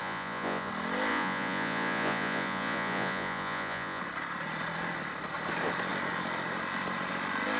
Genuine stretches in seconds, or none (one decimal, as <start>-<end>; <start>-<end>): 0.7-1.1; 4.0-7.6